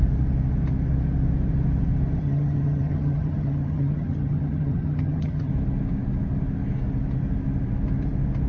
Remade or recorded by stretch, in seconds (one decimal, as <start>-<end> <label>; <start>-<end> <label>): 0.0-2.2 recorded; 2.2-5.5 remade; 5.5-8.5 recorded